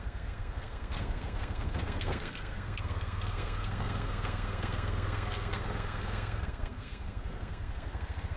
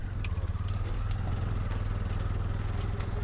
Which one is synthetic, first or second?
first